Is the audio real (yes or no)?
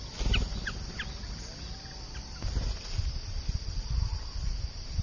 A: yes